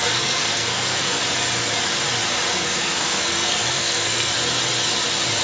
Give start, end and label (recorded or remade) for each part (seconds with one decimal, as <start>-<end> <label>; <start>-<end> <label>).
0.0-1.2 remade; 1.2-2.5 recorded; 2.5-4.3 remade; 4.3-5.4 recorded